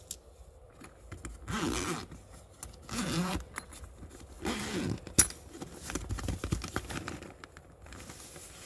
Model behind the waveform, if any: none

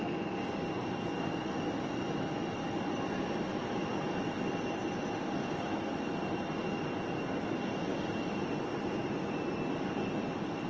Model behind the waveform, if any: none